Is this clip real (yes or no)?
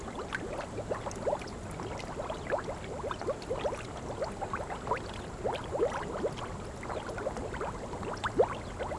yes